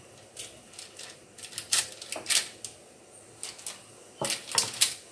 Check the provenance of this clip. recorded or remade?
recorded